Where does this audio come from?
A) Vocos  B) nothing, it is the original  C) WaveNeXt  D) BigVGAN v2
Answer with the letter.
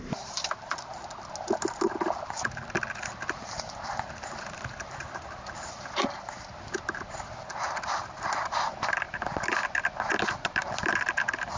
B